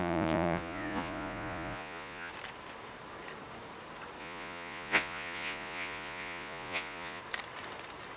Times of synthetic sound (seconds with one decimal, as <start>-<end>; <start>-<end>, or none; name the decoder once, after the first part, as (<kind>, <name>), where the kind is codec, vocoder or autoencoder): 0.0-2.3 (vocoder, Vocos); 4.2-7.2